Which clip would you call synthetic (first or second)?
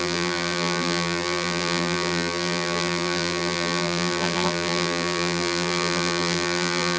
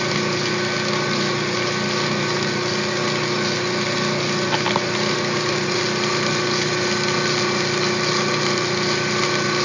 first